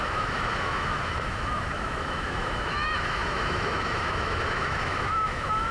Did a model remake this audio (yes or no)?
yes